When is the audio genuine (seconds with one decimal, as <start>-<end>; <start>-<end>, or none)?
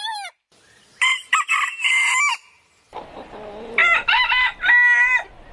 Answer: 0.0-5.5